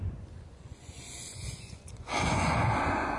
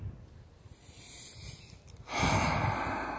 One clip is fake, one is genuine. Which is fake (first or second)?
first